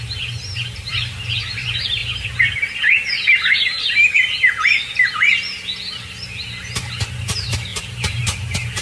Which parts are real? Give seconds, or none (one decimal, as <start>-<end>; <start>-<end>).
2.0-6.8